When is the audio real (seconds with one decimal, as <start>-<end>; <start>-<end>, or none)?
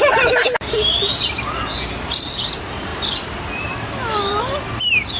0.0-2.9; 4.4-5.2